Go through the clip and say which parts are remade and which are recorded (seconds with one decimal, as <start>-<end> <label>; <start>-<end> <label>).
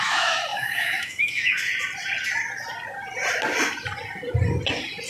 0.0-1.7 remade; 1.7-5.1 recorded